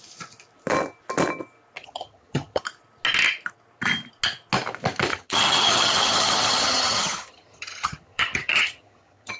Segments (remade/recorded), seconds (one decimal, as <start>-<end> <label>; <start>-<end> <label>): 0.0-1.8 recorded; 1.8-2.6 remade; 2.6-5.1 recorded; 5.1-9.4 remade

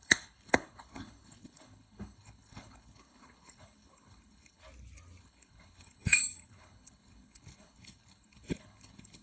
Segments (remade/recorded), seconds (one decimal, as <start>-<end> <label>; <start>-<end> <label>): 0.0-4.6 remade; 4.6-5.2 recorded; 5.2-9.2 remade

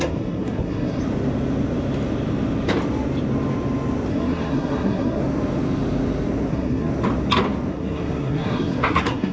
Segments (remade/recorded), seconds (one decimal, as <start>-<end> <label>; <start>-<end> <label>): 0.0-1.0 remade; 1.0-4.1 recorded; 4.1-5.2 remade; 5.2-6.5 recorded; 6.5-6.9 remade; 6.9-7.7 recorded; 7.7-9.3 remade

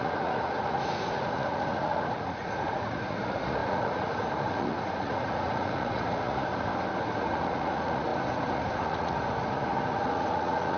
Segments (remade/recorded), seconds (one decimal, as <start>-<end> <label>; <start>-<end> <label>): 0.0-6.7 remade; 6.7-7.2 recorded; 7.2-10.8 remade